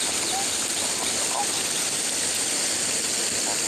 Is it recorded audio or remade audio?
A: recorded